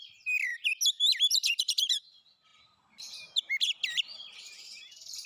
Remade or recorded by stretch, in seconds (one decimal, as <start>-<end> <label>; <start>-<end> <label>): 0.0-0.5 remade; 0.5-1.3 recorded; 1.3-5.3 remade